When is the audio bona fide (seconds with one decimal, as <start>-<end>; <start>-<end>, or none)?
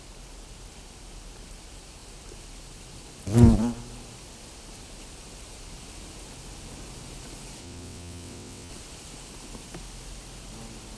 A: 0.0-7.6; 8.7-11.0